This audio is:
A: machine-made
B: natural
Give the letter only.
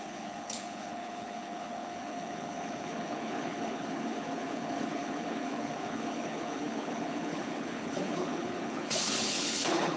A